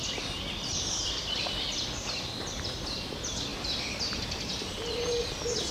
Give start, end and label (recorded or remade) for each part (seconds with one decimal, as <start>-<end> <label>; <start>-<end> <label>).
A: 0.0-5.7 recorded